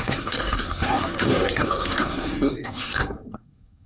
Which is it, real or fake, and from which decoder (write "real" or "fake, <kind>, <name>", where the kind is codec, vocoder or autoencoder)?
fake, codec, SNAC